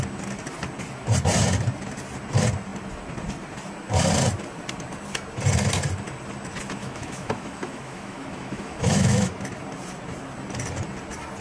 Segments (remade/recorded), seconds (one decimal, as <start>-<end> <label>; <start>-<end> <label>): 0.0-6.8 recorded; 6.8-9.3 remade; 9.3-11.4 recorded